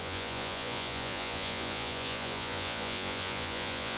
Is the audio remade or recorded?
remade